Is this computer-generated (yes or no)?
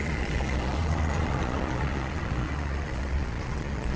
yes